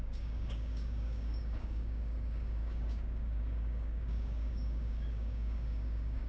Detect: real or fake fake